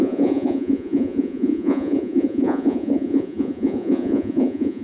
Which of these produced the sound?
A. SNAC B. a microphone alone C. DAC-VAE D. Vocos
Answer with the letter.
D